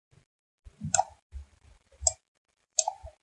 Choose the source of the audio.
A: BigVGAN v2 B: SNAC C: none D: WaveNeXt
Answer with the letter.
A